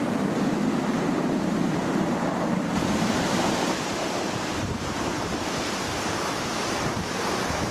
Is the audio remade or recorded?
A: remade